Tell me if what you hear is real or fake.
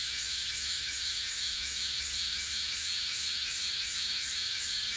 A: fake